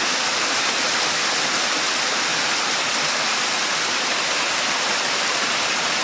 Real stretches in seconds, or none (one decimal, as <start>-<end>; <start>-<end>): 0.0-6.0